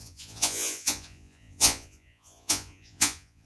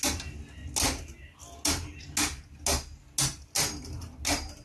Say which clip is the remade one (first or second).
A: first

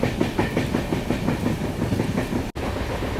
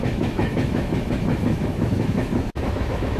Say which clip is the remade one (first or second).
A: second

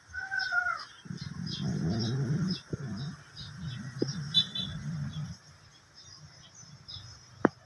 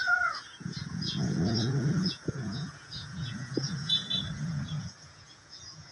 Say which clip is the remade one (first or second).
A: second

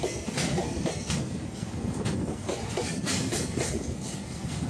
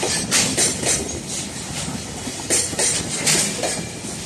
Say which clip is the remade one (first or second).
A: first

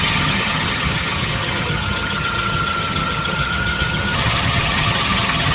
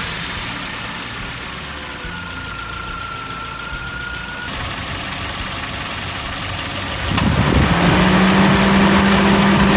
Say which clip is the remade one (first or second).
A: first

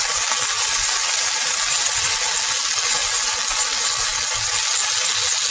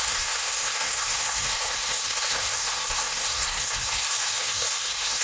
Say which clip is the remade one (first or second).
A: second